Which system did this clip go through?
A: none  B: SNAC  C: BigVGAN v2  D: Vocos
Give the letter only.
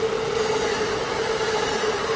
A